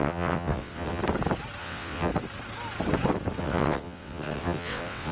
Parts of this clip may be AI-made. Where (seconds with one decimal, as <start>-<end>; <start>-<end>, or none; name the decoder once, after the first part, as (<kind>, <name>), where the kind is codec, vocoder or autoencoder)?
0.0-1.0 (vocoder, WaveNeXt); 1.6-2.1; 3.4-5.1